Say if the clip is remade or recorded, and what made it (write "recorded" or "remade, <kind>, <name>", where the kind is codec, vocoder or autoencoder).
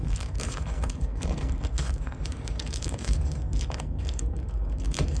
remade, codec, SNAC